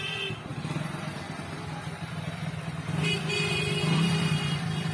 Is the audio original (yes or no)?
yes